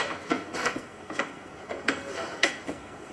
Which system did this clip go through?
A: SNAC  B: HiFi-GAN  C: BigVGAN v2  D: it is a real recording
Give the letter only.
A